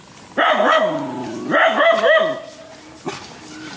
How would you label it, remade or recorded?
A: recorded